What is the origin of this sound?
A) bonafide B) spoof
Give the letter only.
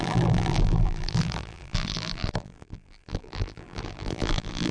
B